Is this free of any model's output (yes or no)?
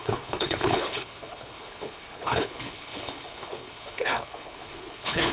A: no